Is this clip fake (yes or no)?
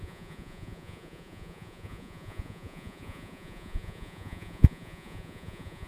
yes